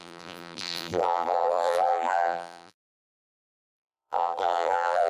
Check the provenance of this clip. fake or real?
fake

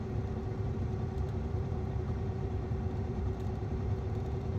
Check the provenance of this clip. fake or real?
fake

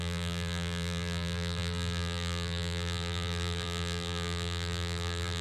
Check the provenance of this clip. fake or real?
fake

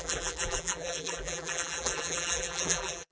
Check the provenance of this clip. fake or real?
fake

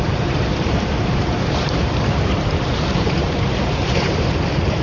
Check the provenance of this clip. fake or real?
fake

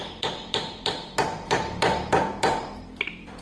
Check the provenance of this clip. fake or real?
fake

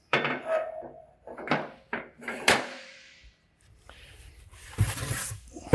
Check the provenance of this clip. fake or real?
fake